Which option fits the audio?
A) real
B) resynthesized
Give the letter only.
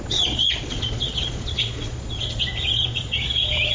B